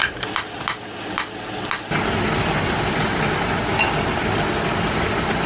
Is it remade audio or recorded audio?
recorded